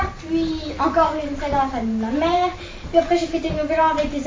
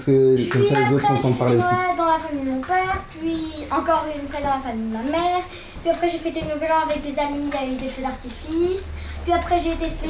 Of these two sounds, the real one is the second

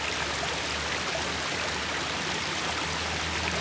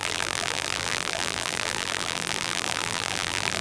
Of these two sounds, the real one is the first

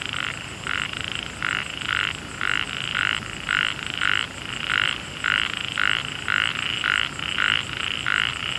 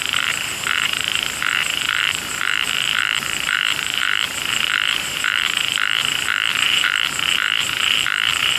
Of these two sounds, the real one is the first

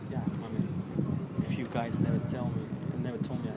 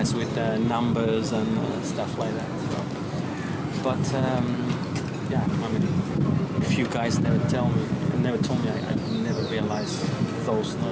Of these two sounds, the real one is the second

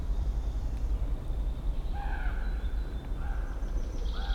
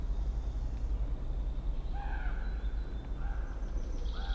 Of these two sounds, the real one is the second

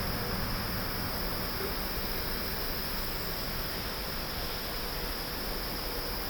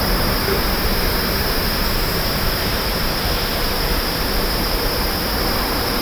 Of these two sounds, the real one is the first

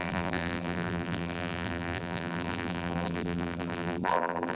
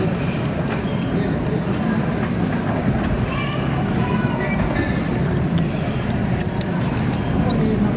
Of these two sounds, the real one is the second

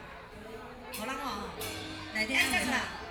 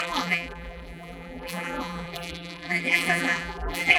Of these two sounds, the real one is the first